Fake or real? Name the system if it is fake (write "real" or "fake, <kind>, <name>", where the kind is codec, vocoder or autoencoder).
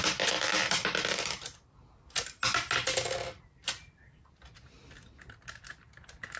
real